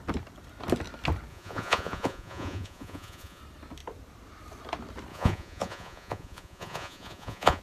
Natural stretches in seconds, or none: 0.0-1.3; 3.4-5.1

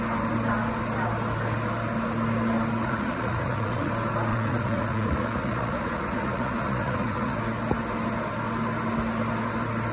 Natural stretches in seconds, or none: 0.0-2.8; 3.9-4.3; 7.4-9.9

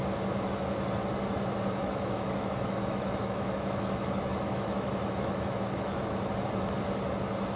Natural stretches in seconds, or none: 0.0-1.8; 6.3-7.6

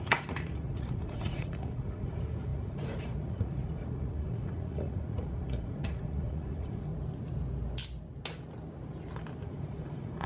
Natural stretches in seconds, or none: 6.9-9.4

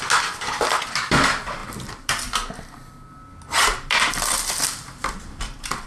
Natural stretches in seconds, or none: 0.0-5.9

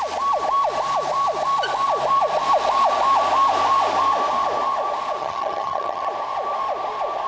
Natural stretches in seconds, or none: 0.0-5.2; 6.1-7.3